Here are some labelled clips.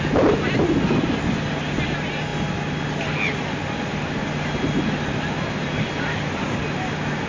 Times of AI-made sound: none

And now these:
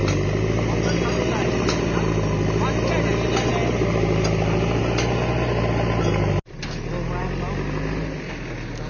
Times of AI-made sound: none

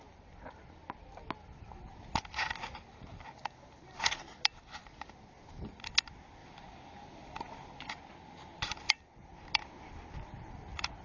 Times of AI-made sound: none